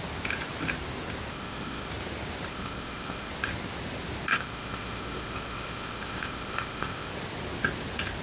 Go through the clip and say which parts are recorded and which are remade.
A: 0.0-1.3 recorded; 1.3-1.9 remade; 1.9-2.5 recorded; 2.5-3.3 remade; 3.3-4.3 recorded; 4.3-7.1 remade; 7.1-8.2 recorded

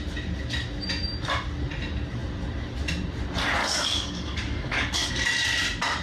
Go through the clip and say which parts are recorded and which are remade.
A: 0.0-3.6 recorded; 3.6-5.1 remade; 5.1-6.0 recorded

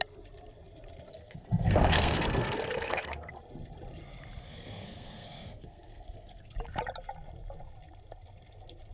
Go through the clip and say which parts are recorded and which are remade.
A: 0.0-1.1 recorded; 1.1-3.3 remade; 3.3-4.4 recorded; 4.4-6.5 remade; 6.5-8.9 recorded

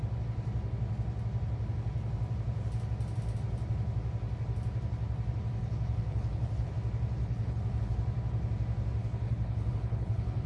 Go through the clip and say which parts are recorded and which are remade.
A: 0.0-5.6 recorded; 5.6-6.7 remade; 6.7-7.2 recorded; 7.2-7.8 remade; 7.8-9.0 recorded; 9.0-10.5 remade

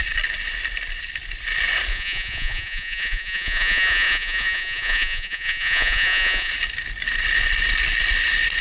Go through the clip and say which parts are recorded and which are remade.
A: 0.0-1.9 recorded; 1.9-6.5 remade; 6.5-8.6 recorded